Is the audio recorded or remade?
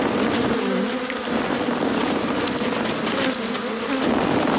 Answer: recorded